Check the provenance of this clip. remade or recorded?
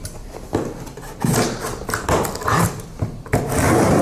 recorded